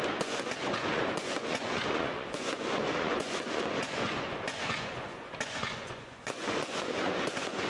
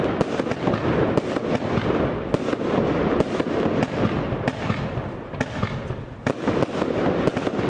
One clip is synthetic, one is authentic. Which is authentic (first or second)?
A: second